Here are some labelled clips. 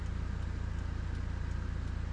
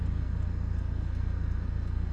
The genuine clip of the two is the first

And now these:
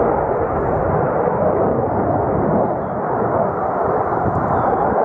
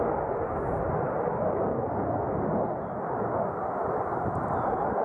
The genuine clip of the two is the second